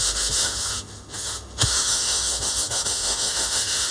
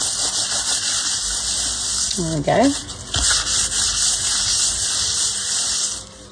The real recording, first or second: second